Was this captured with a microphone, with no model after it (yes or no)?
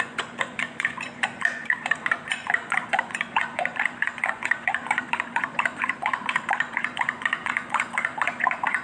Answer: no